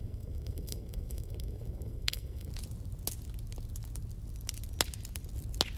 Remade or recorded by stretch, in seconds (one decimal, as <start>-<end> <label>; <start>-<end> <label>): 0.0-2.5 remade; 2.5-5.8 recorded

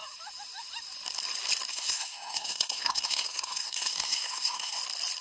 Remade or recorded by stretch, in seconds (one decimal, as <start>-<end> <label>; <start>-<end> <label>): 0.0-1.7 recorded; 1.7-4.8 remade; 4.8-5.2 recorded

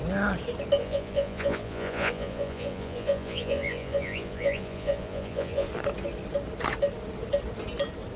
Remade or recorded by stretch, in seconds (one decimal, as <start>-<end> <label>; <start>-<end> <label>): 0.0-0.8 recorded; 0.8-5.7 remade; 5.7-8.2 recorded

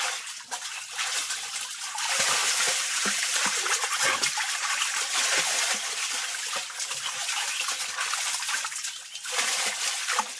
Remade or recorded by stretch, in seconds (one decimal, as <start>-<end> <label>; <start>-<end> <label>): 0.0-2.4 recorded; 2.4-4.7 remade; 4.7-10.4 recorded

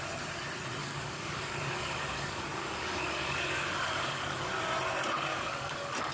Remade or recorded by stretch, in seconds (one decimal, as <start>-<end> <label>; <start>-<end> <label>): 0.0-0.8 recorded; 0.8-4.5 remade; 4.5-5.3 recorded; 5.3-6.1 remade